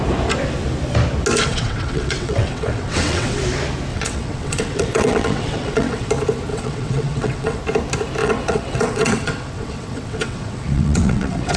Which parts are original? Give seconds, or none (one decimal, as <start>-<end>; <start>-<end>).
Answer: 0.0-1.5; 3.4-3.9; 6.1-6.5; 7.6-8.2